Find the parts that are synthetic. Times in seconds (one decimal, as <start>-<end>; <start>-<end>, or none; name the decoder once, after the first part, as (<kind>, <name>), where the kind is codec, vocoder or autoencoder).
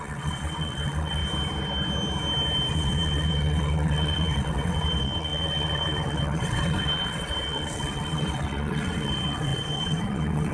0.0-1.2 (vocoder, WaveNeXt); 2.7-10.5